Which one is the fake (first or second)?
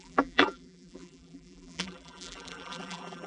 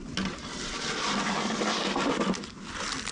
first